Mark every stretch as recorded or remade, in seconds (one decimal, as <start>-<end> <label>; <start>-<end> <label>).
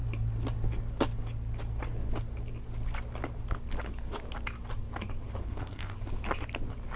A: 0.0-5.4 recorded; 5.4-5.9 remade; 5.9-7.0 recorded